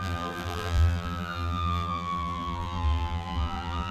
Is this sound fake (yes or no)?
yes